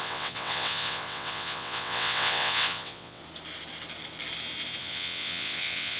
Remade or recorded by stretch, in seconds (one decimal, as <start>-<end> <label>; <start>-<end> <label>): 0.0-3.2 remade; 3.2-4.8 recorded; 4.8-6.0 remade